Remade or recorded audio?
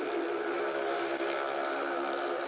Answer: recorded